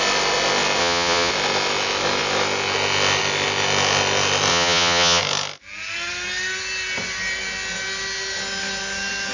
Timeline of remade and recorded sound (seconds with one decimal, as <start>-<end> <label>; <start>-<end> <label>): 0.0-0.8 recorded; 0.8-1.3 remade; 1.3-4.5 recorded; 4.5-5.2 remade; 5.2-9.3 recorded